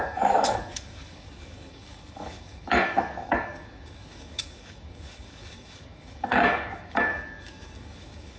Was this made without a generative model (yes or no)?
no